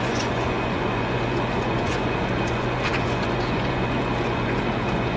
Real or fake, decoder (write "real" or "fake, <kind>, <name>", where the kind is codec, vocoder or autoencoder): fake, vocoder, Vocos